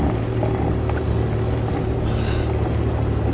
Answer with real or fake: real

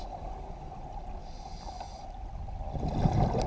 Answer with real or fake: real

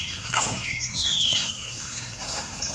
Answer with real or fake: fake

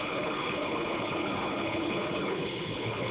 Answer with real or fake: fake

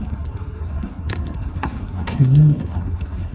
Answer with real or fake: fake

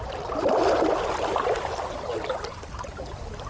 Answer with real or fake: real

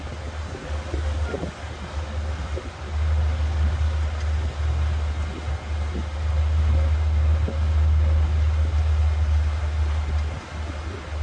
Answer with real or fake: real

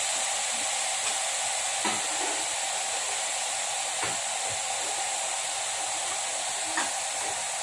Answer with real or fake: real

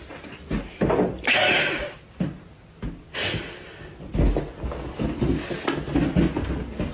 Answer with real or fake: real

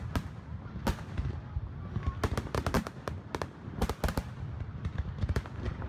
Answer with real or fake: real